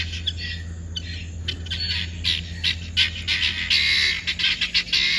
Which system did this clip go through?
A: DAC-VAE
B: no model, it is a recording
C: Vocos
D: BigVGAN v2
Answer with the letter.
B